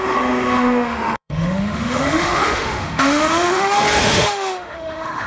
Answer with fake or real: fake